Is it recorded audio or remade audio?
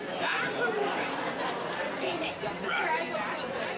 remade